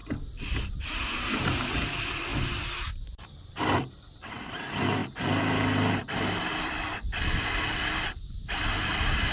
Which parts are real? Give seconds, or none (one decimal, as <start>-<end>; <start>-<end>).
2.3-2.9; 5.0-6.5

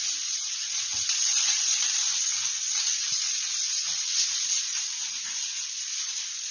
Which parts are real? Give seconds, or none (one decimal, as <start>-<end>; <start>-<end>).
none

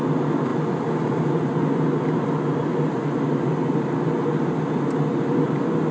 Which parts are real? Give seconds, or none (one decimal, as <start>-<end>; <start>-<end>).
0.0-5.9

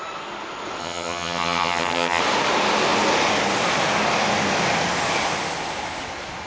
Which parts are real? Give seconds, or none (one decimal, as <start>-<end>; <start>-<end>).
0.0-0.8; 2.2-6.5